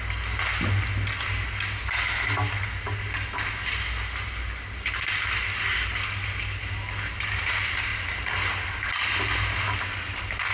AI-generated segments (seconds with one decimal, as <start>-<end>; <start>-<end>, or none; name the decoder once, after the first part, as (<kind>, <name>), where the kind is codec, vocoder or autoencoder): none